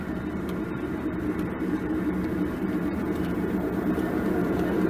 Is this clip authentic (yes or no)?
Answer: no